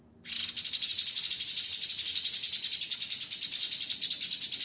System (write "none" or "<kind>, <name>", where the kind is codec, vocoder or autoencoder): none